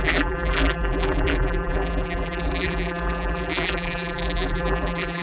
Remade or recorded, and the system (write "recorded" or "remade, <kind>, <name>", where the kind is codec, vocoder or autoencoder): remade, vocoder, BigVGAN v2